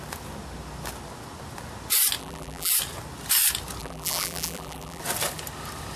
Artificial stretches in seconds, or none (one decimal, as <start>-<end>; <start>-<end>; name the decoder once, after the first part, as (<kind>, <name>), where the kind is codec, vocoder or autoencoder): 2.2-2.7 (vocoder, BigVGAN v2); 3.8-5.0